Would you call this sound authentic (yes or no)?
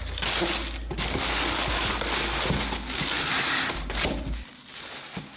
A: yes